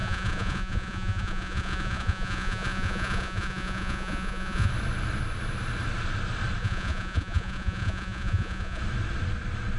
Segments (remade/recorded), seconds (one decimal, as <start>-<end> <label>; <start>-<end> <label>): 0.0-4.7 remade; 4.7-6.6 recorded; 6.6-8.8 remade; 8.8-9.8 recorded